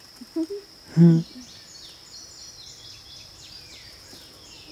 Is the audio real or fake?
real